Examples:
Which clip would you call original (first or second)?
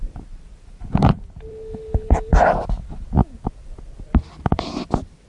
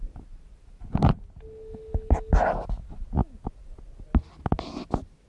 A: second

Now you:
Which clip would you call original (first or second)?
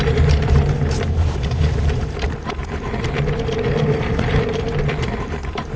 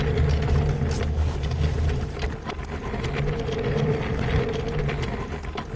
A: second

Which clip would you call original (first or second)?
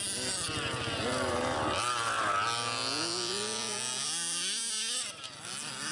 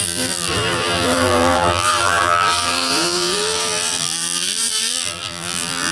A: first